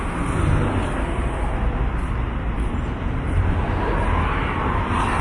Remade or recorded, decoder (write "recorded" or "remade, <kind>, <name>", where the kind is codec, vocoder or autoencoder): recorded